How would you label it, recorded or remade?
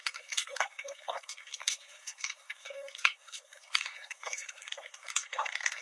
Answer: remade